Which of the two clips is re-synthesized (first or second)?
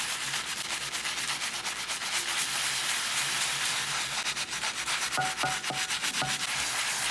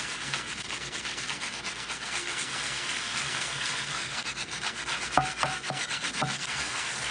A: second